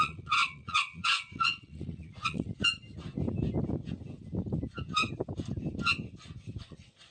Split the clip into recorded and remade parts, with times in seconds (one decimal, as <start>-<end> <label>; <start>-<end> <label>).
0.0-2.6 remade; 2.6-6.6 recorded; 6.6-7.1 remade